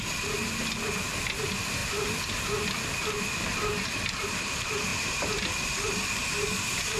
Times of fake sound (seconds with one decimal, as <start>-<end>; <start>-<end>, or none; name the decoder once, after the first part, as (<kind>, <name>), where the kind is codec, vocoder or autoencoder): 1.8-4.5 (vocoder, BigVGAN v2); 4.9-7.0

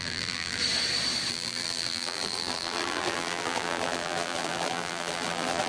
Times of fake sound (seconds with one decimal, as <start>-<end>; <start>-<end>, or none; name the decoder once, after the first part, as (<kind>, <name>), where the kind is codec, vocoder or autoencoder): 0.0-0.6 (vocoder, BigVGAN v2); 1.3-5.7

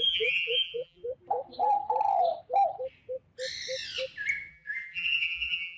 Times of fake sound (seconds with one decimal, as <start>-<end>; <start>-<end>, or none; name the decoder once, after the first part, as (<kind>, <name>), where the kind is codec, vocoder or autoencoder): 0.0-1.0 (vocoder, BigVGAN v2); 4.5-5.8

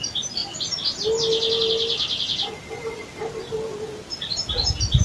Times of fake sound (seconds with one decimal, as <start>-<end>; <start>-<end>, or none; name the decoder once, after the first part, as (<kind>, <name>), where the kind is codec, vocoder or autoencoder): none

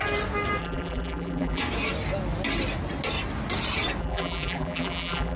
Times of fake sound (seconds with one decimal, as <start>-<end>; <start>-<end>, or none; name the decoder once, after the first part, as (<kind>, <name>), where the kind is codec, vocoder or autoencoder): 0.6-1.6 (vocoder, BigVGAN v2); 4.0-5.4